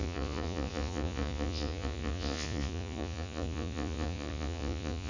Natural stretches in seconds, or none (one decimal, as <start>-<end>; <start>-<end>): none